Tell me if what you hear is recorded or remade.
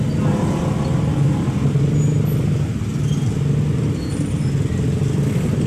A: recorded